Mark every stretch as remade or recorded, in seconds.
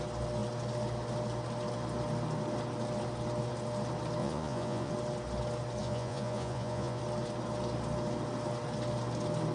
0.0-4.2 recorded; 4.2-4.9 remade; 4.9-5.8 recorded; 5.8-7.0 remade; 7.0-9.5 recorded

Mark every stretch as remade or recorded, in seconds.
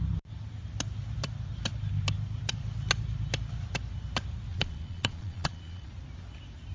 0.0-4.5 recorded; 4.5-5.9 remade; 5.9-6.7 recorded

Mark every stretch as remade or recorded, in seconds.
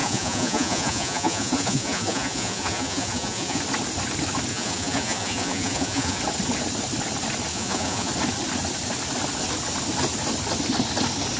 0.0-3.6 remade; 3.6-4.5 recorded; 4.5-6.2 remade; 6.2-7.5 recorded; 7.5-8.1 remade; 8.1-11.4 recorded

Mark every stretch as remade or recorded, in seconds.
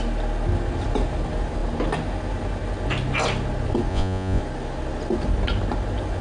0.0-3.9 recorded; 3.9-4.4 remade; 4.4-6.2 recorded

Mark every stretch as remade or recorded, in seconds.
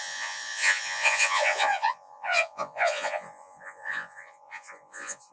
0.0-5.3 remade